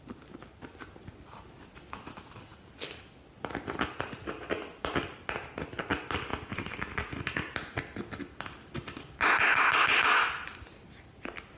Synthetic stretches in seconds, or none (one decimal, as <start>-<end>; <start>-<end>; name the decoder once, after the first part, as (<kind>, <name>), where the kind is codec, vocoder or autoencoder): none